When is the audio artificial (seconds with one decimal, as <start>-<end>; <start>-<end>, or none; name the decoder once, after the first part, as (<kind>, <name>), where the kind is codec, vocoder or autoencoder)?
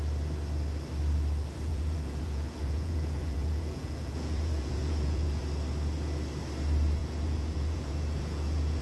1.7-5.4 (vocoder, Vocos); 7.0-8.8